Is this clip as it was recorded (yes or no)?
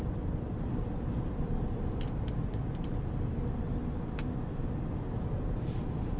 no